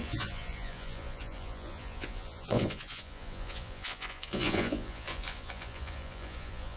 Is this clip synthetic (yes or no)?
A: yes